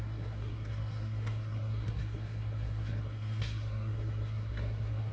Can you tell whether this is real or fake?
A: fake